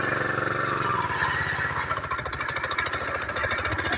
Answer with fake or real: real